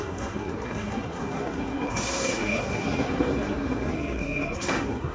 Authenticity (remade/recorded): remade